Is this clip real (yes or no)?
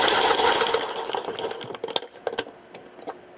yes